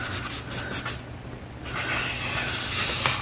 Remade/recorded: recorded